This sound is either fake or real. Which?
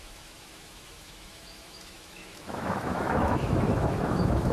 fake